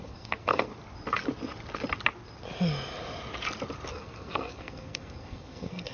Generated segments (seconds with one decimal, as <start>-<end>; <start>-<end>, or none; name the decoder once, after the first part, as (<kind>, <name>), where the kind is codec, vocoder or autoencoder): 0.0-0.7 (codec, SNAC); 3.9-5.9